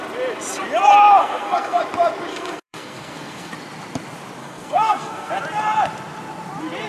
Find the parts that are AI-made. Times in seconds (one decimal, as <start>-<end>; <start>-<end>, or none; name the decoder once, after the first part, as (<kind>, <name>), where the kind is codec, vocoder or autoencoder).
1.2-1.8 (codec, SNAC); 2.3-3.5; 4.4-5.3